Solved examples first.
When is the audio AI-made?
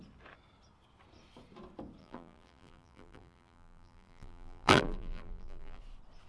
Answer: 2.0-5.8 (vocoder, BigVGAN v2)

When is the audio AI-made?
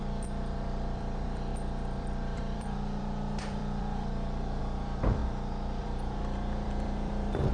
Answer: 0.0-5.2 (vocoder, BigVGAN v2); 5.8-7.5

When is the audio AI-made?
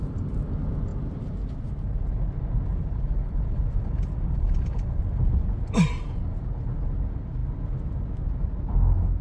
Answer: 2.7-5.0 (vocoder, BigVGAN v2)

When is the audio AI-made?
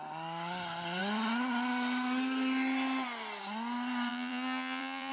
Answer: 4.1-5.1 (vocoder, BigVGAN v2)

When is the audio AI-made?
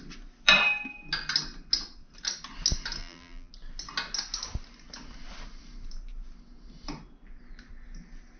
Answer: 3.0-3.5 (vocoder, BigVGAN v2)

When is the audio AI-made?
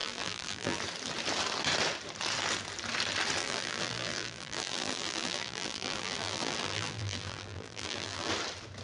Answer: 0.0-0.8 (vocoder, BigVGAN v2); 3.4-8.3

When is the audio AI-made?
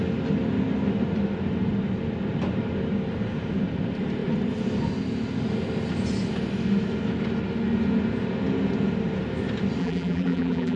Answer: 9.8-10.8 (vocoder, BigVGAN v2)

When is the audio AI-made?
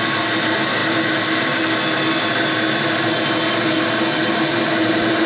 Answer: none